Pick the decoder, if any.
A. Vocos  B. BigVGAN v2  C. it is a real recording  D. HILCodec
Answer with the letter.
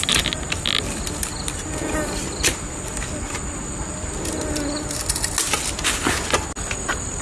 C